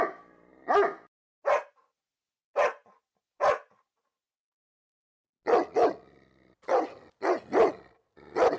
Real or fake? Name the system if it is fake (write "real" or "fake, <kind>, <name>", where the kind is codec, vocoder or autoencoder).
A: real